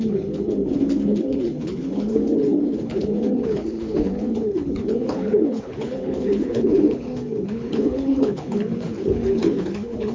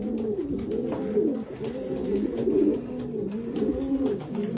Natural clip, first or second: second